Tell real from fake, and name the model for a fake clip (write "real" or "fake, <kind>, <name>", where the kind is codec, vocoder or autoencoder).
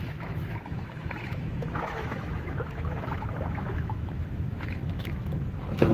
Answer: fake, autoencoder, DAC-VAE